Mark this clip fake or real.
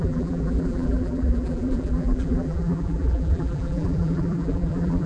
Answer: fake